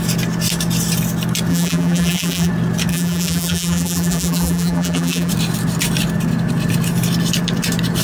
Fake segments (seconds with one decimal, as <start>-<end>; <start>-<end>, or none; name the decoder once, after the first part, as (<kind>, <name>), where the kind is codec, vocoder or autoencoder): 1.5-2.5 (vocoder, BigVGAN v2); 2.9-5.3